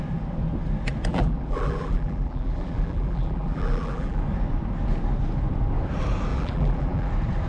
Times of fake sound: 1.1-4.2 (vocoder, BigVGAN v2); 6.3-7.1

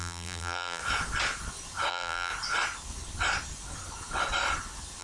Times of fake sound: 0.0-0.8 (vocoder, BigVGAN v2); 1.9-2.3